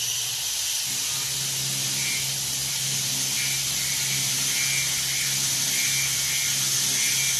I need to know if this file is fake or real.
real